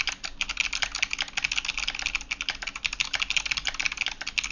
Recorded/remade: recorded